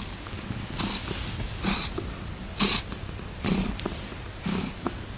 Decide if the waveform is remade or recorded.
recorded